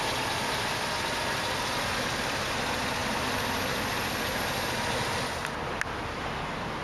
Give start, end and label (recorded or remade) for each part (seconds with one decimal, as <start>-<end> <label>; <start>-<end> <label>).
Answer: 0.0-6.8 recorded